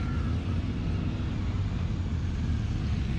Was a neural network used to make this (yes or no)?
no